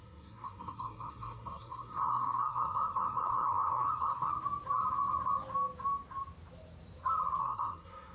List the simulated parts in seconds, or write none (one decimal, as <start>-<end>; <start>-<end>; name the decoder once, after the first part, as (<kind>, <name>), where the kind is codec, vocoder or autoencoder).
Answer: 0.0-4.3 (codec, SNAC); 7.4-8.1